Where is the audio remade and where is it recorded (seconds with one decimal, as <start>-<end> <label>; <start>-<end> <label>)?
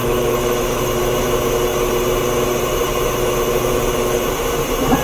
0.0-1.0 remade; 1.0-5.0 recorded